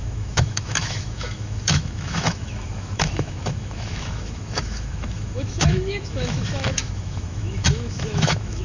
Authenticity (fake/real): fake